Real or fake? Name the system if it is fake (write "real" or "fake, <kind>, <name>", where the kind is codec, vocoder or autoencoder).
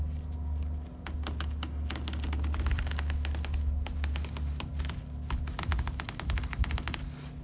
real